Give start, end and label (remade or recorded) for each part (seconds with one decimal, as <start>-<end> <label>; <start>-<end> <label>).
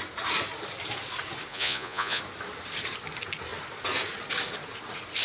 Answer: 0.0-1.5 recorded; 1.5-2.2 remade; 2.2-5.2 recorded